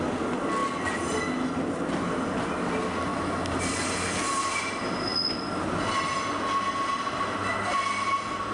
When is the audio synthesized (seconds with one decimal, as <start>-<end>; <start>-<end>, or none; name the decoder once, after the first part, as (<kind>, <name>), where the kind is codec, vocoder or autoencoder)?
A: none